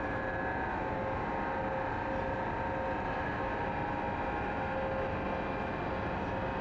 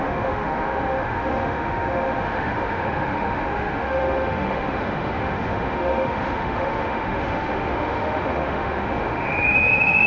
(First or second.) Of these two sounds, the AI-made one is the second